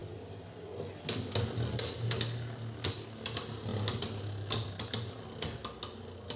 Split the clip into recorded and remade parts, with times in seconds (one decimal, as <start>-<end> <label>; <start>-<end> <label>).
0.0-6.4 recorded